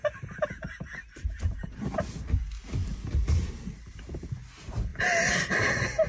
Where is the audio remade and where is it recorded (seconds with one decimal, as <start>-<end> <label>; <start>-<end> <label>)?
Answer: 0.0-6.1 recorded